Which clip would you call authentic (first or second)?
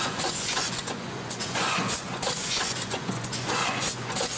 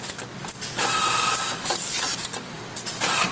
second